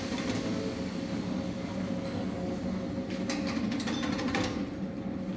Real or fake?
real